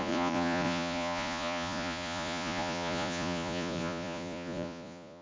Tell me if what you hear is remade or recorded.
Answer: remade